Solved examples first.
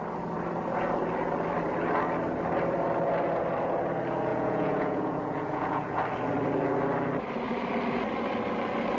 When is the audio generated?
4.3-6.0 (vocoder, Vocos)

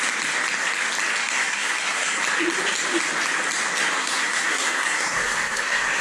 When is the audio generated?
1.2-2.2 (codec, SNAC); 4.0-6.0

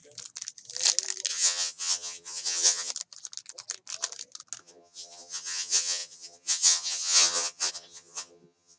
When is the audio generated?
1.3-2.9 (vocoder, HiFi-GAN); 4.6-8.8

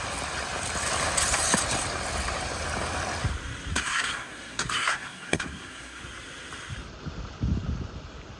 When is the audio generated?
3.7-6.0 (codec, SNAC)

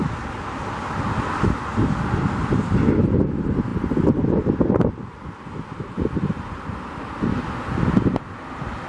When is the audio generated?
none

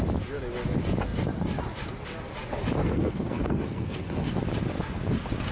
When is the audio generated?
2.8-4.3 (codec, SNAC)